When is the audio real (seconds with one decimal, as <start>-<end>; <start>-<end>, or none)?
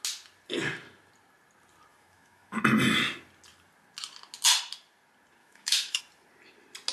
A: 0.0-1.9; 2.6-5.4; 6.0-6.9